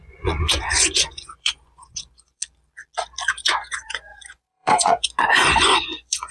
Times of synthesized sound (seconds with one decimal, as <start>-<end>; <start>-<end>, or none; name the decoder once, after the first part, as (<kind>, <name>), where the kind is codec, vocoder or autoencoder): 0.0-2.4 (vocoder, Vocos); 3.3-6.3